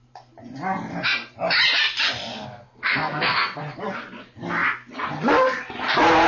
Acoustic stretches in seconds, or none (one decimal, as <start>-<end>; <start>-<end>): 0.0-2.3; 3.6-6.3